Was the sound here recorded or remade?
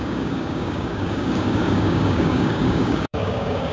remade